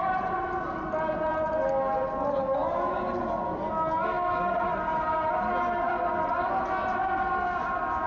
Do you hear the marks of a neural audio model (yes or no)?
no